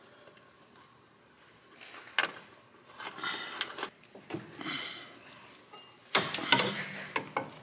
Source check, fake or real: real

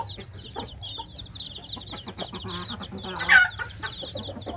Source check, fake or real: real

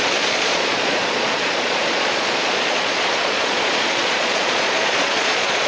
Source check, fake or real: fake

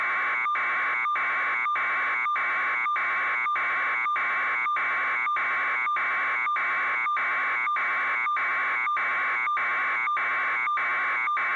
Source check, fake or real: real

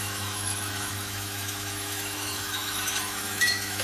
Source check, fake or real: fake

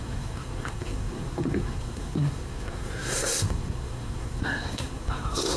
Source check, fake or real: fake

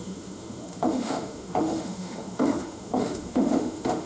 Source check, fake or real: fake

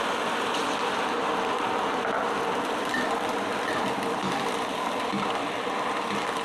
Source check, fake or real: real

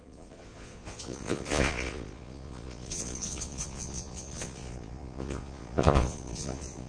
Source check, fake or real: fake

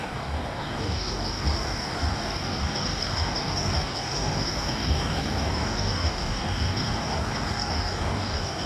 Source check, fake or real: fake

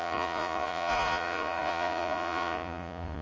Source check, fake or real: fake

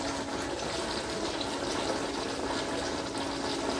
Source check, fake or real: real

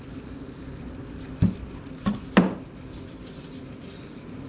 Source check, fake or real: real